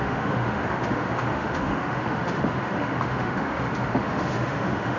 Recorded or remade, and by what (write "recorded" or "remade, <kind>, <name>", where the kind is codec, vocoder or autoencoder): remade, autoencoder, DAC-VAE